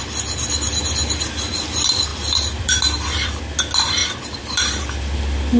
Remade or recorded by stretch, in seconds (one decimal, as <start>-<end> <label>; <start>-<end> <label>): 0.0-2.1 recorded; 2.1-3.4 remade; 3.4-4.0 recorded; 4.0-4.8 remade; 4.8-5.6 recorded